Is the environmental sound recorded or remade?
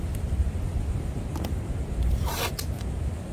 recorded